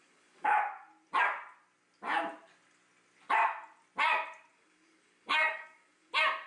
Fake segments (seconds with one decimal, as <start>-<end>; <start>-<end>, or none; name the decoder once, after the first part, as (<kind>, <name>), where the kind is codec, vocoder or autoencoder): 0.0-0.6 (codec, DAC); 4.5-6.1